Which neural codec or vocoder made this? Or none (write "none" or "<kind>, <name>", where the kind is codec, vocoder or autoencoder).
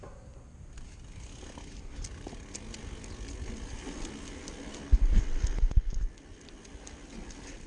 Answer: none